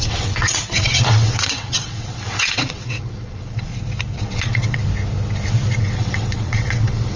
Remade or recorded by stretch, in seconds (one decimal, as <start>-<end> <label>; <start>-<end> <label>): 0.0-3.7 remade; 3.7-4.2 recorded; 4.2-4.8 remade; 4.8-5.8 recorded; 5.8-7.2 remade